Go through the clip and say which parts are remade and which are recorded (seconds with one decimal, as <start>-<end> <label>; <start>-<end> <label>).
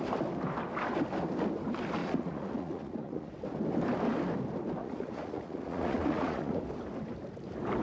0.0-2.0 recorded; 2.0-3.3 remade; 3.3-4.8 recorded; 4.8-6.6 remade; 6.6-7.8 recorded